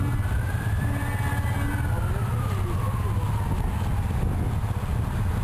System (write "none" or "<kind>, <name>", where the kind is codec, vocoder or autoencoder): none